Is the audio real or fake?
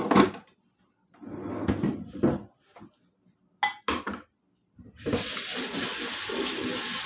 real